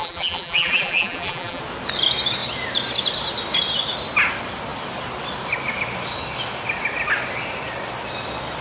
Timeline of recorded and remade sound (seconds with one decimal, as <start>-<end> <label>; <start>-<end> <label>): 0.0-1.6 remade; 1.6-8.6 recorded